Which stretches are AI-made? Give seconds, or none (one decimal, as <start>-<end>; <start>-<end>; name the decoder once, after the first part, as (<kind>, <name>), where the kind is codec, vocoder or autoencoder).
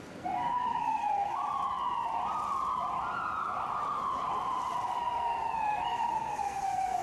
0.0-1.4 (codec, SNAC); 5.0-7.0